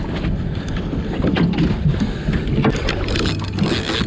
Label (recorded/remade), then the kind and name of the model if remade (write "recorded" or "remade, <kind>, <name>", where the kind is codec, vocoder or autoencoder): recorded